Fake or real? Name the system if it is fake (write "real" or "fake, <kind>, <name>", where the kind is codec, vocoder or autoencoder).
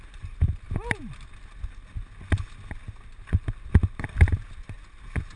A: real